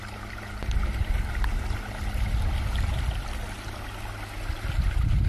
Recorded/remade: recorded